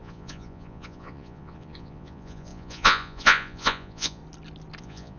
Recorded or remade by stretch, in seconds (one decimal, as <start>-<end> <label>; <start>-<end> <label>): 0.0-4.2 remade; 4.2-4.8 recorded; 4.8-5.2 remade